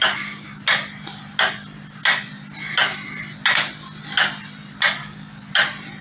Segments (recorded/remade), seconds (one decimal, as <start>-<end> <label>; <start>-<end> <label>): 0.0-0.6 remade; 0.6-5.0 recorded; 5.0-5.5 remade; 5.5-6.0 recorded